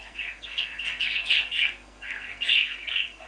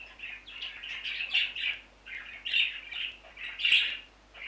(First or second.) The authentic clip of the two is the second